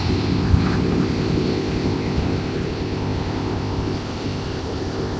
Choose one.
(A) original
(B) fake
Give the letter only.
B